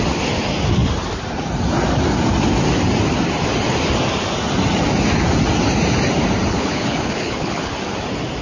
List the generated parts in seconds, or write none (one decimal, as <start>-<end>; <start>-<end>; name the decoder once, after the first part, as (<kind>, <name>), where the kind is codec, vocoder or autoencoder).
6.5-7.7 (codec, HILCodec)